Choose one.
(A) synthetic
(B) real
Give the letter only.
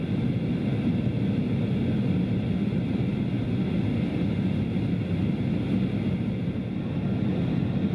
B